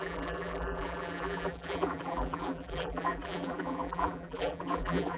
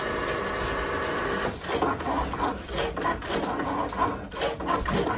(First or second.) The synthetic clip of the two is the first